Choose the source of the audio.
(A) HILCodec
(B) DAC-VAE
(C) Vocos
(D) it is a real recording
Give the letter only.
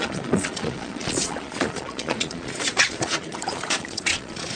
C